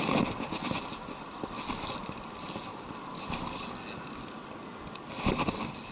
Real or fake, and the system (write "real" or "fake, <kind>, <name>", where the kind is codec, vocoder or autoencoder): real